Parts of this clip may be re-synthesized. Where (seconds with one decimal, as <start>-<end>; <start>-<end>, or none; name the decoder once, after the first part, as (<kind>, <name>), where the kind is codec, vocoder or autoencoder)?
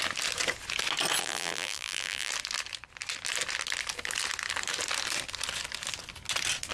1.2-2.3 (vocoder, BigVGAN v2)